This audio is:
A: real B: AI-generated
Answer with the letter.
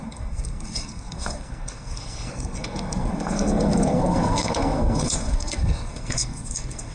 B